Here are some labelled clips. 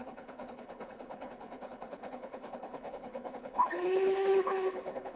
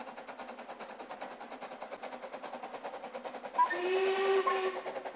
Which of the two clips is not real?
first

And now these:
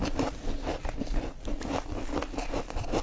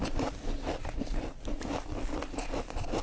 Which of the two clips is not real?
second